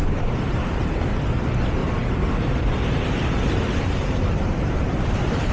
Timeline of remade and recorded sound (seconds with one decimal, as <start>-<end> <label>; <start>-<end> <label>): 0.0-1.0 remade; 1.0-1.8 recorded; 1.8-5.1 remade; 5.1-5.5 recorded